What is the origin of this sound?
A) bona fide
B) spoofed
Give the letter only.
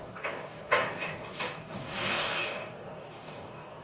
B